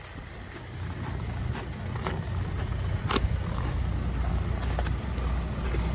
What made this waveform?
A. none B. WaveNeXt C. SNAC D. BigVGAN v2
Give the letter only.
A